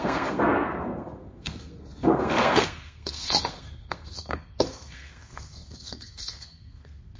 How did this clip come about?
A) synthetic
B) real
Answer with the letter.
A